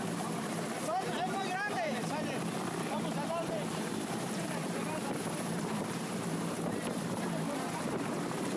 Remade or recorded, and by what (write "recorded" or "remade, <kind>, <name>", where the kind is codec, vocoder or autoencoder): remade, vocoder, BigVGAN v2